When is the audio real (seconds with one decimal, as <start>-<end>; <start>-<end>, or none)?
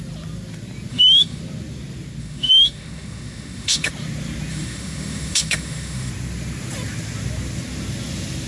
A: 0.0-0.9; 1.4-2.2; 3.9-4.5; 6.1-8.5